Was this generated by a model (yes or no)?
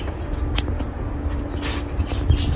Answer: no